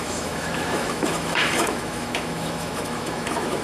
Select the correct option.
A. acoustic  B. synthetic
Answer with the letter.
B